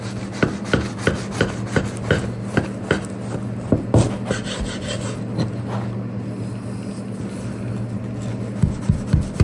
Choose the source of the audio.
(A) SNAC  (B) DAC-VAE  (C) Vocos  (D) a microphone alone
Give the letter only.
D